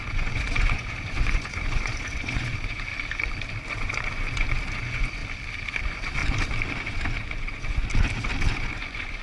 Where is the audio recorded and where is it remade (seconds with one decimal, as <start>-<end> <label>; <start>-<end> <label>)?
0.0-2.9 remade; 2.9-3.7 recorded; 3.7-5.2 remade; 5.2-5.8 recorded; 5.8-6.2 remade; 6.2-6.9 recorded; 6.9-7.8 remade; 7.8-8.5 recorded; 8.5-9.2 remade